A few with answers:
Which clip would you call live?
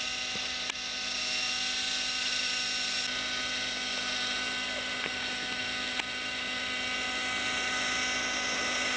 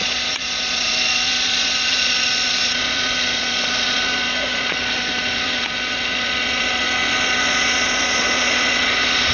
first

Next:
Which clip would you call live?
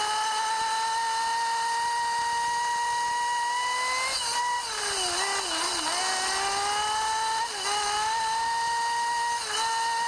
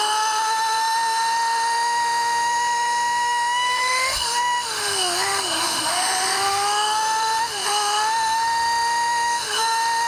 first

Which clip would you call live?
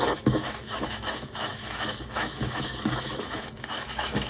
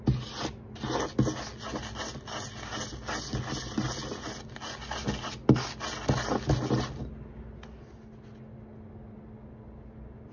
second